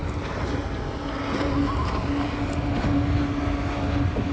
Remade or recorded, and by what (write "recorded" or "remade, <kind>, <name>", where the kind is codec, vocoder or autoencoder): recorded